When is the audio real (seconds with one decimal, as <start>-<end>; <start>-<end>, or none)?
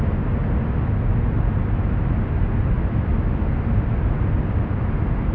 0.0-5.3